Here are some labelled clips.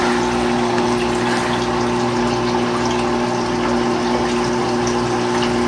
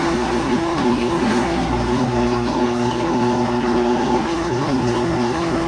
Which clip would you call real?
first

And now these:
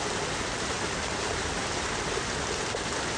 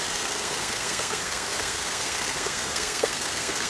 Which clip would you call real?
first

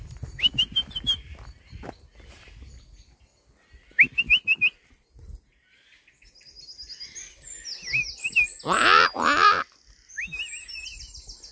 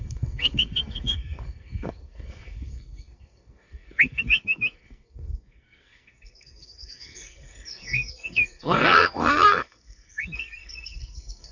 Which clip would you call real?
first